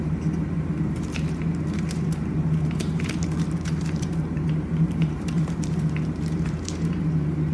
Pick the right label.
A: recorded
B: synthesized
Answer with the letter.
B